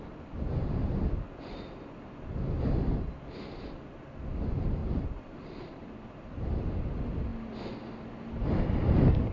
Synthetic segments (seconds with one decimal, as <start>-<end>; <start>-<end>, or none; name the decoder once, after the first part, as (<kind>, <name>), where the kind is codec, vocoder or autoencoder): 4.8-6.8 (vocoder, BigVGAN v2)